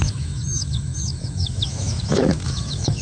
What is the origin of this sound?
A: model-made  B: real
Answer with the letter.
A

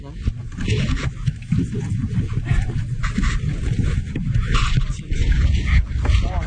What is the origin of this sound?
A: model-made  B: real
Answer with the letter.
B